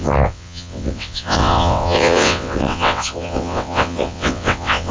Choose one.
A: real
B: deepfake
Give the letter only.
B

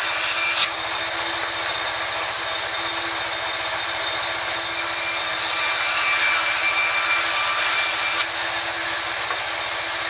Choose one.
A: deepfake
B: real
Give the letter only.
B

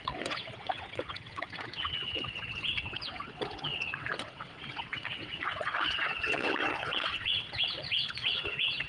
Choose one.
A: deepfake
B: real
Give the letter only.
A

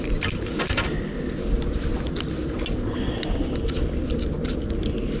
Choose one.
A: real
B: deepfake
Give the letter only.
A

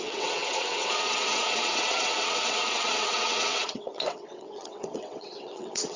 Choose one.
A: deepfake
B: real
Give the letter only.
A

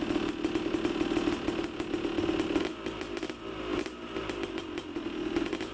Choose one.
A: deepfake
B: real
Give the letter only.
B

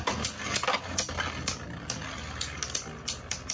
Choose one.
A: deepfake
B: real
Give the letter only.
B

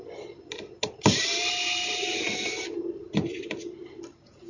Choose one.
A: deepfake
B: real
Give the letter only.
B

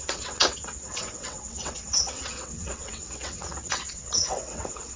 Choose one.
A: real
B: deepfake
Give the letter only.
B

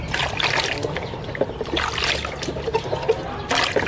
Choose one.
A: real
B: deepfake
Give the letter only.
A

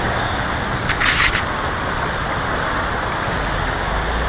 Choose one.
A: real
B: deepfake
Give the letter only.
A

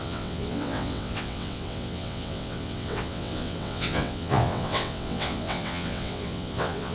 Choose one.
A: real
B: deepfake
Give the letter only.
B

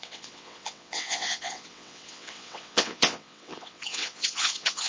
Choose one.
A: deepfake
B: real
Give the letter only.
A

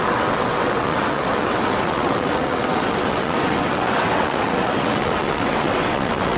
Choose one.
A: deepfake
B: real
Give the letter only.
A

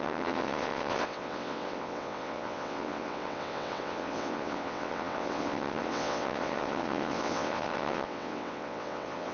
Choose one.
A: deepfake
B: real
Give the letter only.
A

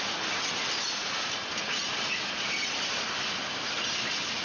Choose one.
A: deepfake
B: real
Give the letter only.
B